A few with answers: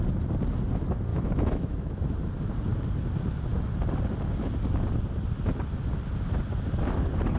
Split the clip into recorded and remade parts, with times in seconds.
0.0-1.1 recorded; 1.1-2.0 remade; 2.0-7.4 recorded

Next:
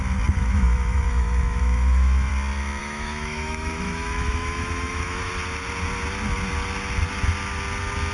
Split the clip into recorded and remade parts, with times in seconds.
0.0-0.4 recorded; 0.4-2.3 remade; 2.3-2.8 recorded; 2.8-5.3 remade; 5.3-8.1 recorded

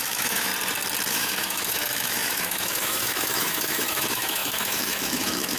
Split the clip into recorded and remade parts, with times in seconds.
0.0-0.5 remade; 0.5-1.1 recorded; 1.1-5.6 remade

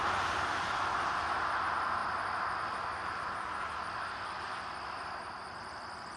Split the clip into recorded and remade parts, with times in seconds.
0.0-6.2 recorded